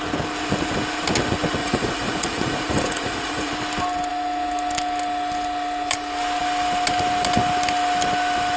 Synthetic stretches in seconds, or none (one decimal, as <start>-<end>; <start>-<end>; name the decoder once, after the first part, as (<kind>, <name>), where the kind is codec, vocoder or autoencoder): 1.6-3.5 (vocoder, Vocos)